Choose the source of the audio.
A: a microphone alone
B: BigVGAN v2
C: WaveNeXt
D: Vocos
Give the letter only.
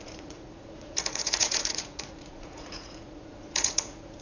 D